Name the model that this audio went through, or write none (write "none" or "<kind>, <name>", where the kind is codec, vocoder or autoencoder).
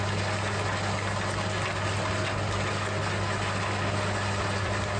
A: none